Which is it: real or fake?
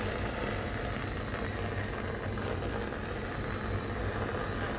real